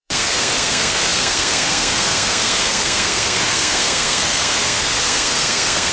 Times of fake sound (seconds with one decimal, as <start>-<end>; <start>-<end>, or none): 0.0-5.9

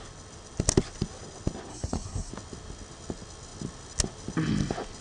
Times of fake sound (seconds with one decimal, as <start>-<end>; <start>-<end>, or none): 1.7-2.3

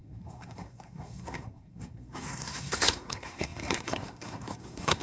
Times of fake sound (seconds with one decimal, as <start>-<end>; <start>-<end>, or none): 0.0-5.0

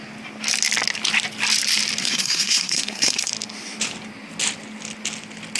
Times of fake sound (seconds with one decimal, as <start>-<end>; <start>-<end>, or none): 2.0-3.3

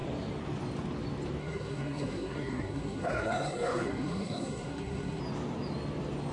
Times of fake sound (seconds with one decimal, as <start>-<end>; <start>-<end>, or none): 1.4-5.2

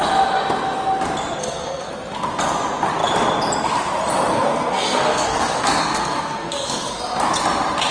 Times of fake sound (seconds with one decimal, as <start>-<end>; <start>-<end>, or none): 1.4-1.9; 4.3-7.0

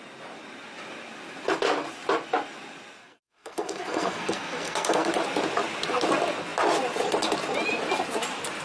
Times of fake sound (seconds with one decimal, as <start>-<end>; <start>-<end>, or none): 3.0-5.1